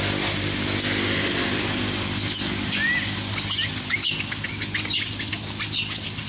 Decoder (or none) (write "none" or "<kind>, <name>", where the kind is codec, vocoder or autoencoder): none